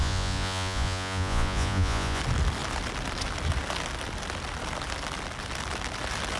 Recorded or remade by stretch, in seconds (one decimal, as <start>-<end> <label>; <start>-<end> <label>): 0.0-2.2 remade; 2.2-6.4 recorded